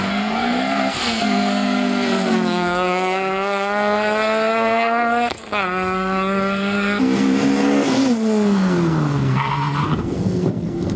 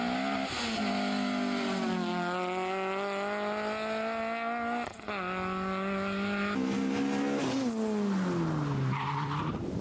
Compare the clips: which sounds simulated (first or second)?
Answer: first